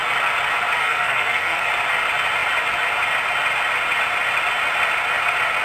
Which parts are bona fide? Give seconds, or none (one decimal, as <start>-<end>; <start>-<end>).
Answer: 0.0-0.8; 1.7-5.6